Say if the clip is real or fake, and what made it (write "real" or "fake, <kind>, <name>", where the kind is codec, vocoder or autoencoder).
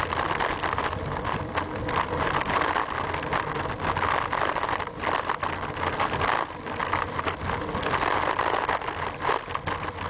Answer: real